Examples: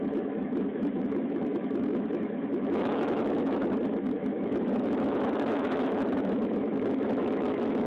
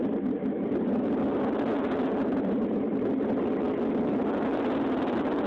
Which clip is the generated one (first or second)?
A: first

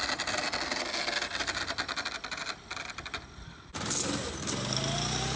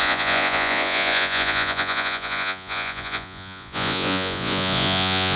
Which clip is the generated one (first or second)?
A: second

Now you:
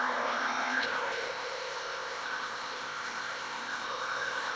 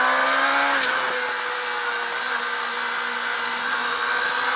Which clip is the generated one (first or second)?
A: first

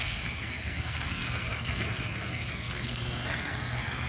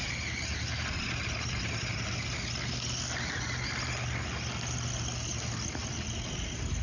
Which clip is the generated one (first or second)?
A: first